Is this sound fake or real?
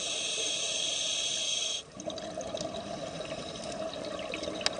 real